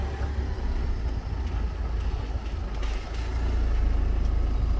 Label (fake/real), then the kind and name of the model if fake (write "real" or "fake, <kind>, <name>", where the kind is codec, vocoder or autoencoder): real